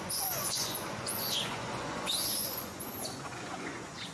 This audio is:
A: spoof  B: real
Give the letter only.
A